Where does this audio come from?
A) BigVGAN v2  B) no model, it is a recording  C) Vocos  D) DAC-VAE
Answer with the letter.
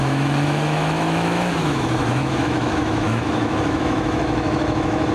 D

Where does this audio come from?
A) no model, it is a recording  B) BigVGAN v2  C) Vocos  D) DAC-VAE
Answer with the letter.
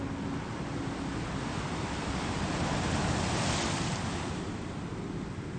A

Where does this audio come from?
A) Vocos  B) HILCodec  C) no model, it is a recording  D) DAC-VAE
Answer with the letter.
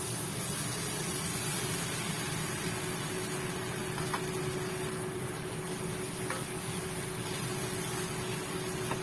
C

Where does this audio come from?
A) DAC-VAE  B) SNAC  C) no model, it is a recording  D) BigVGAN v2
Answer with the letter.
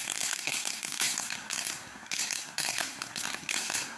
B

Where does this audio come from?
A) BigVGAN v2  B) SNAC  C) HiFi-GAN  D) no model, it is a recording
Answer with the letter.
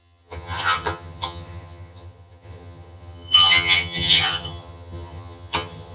C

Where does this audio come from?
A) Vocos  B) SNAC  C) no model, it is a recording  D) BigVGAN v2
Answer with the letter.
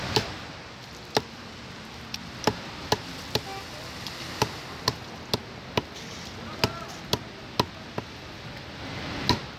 C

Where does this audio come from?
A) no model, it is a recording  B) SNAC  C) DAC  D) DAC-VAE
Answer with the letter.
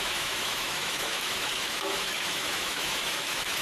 D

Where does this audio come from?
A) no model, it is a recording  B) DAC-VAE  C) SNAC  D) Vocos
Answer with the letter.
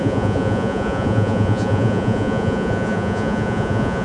D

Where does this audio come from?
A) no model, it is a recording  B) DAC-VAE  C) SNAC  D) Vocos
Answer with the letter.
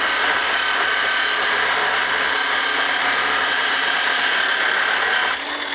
A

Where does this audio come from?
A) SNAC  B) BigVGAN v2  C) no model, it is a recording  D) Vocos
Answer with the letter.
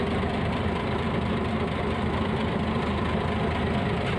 B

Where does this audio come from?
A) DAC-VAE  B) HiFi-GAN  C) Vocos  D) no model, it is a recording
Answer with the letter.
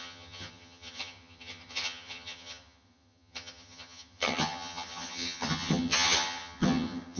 B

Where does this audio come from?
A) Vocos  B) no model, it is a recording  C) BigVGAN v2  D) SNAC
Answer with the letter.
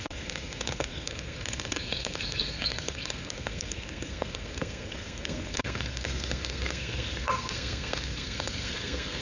D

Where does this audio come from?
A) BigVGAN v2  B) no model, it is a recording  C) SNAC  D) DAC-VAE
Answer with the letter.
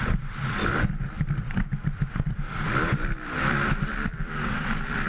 A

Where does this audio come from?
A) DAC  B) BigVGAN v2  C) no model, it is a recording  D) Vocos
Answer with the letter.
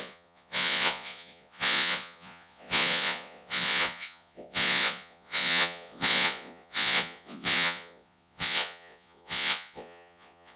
D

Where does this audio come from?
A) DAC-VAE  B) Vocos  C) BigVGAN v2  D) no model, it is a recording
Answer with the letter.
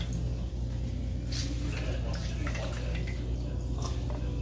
D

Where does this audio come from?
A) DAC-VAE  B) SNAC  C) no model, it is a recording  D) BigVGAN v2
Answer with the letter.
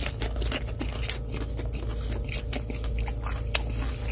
C